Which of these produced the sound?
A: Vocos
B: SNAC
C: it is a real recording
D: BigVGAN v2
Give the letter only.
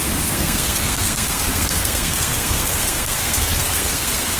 B